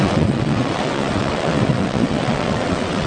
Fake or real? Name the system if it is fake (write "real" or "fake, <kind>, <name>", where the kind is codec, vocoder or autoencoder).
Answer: fake, vocoder, WaveNeXt